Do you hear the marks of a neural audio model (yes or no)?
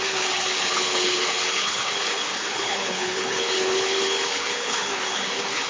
yes